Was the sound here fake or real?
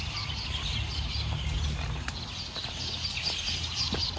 real